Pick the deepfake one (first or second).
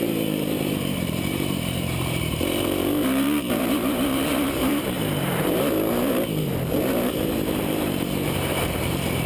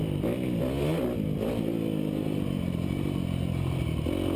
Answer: first